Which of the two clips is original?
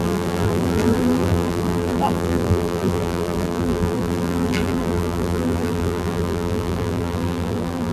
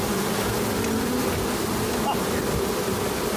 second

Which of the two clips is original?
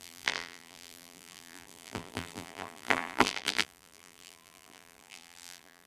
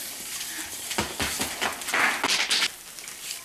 second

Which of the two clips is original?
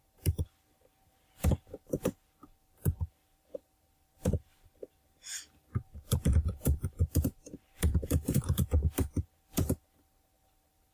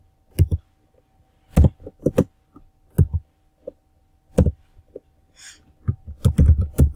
second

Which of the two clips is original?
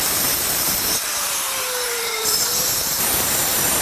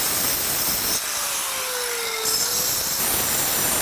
second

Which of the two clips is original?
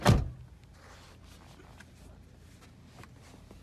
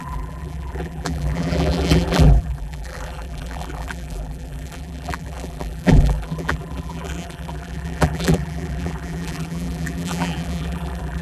first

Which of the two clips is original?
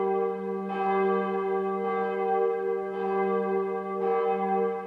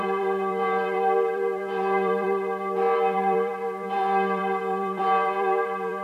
first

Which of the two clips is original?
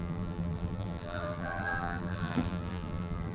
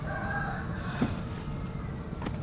second